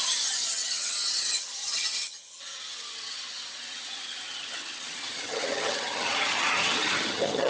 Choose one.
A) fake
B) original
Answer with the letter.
A